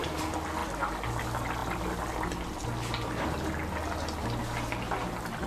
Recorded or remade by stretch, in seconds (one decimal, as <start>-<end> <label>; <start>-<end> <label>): 0.0-5.5 recorded